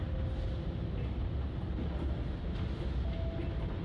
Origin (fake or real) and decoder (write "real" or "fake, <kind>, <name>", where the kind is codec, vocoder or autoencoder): real